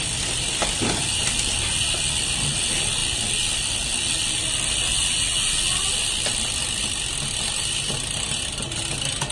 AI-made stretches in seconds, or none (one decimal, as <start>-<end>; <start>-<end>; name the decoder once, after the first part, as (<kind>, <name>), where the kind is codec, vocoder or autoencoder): none